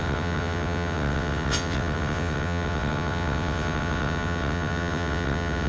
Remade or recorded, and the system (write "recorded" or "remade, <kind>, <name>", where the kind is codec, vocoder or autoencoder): remade, vocoder, WaveNeXt